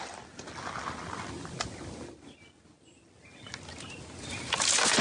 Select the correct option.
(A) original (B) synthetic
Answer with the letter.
A